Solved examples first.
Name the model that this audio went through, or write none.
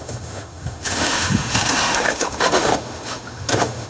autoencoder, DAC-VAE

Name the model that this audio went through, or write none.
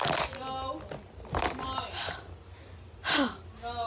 none